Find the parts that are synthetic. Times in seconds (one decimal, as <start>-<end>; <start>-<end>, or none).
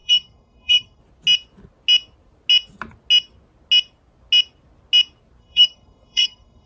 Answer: 0.0-1.0; 5.4-6.7